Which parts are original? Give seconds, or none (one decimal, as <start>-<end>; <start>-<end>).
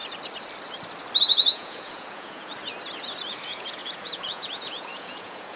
0.0-1.2; 2.5-3.3